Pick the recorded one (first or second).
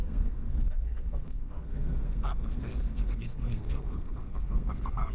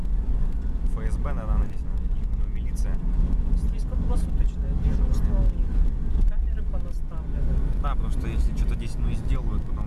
second